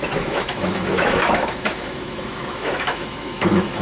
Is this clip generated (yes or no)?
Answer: yes